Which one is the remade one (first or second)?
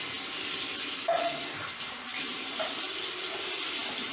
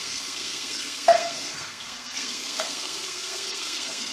second